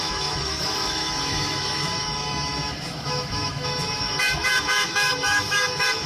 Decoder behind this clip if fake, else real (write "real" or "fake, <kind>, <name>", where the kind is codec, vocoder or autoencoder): fake, autoencoder, DAC-VAE